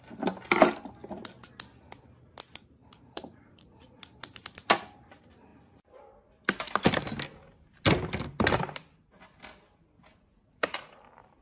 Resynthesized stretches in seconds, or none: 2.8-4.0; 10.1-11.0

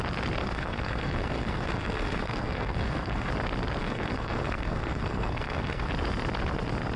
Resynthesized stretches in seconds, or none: 0.4-3.3; 3.8-5.9

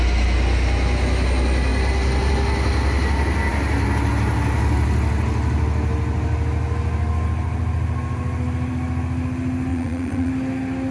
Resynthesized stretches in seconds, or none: 9.7-10.3

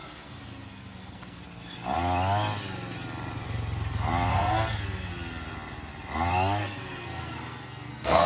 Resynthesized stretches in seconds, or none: 0.0-1.4; 4.3-5.1; 6.6-8.3

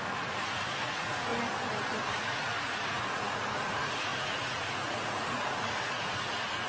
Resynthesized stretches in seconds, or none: 0.0-1.3; 2.1-6.7

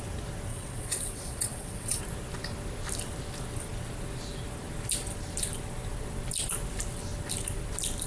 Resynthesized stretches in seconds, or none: 0.5-2.0